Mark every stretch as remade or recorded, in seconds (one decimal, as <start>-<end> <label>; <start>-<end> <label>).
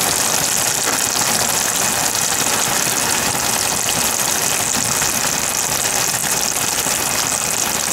0.0-6.2 recorded; 6.2-6.9 remade; 6.9-7.9 recorded